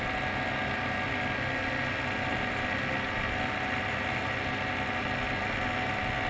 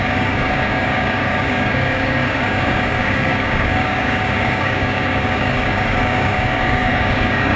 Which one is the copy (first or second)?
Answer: second